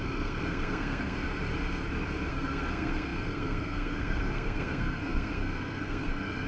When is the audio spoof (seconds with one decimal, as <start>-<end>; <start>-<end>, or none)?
0.0-1.5; 2.3-6.5